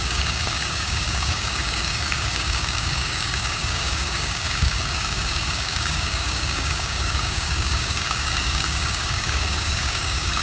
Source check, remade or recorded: remade